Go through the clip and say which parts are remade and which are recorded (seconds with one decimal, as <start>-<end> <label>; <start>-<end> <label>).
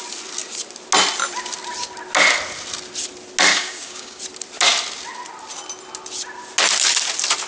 0.0-3.5 recorded; 3.5-4.2 remade; 4.2-7.5 recorded